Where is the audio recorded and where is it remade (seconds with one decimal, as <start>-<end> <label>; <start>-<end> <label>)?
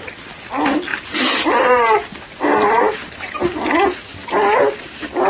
0.0-0.9 recorded; 0.9-1.6 remade; 1.6-2.5 recorded; 2.5-3.4 remade; 3.4-5.3 recorded